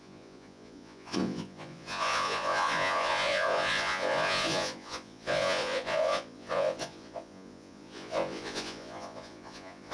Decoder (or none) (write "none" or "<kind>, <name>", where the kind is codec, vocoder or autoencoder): vocoder, Vocos